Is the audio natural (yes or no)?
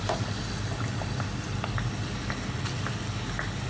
yes